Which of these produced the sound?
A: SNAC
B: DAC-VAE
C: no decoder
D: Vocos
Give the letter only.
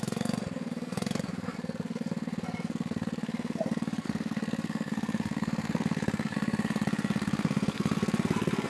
A